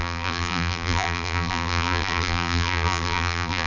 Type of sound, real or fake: fake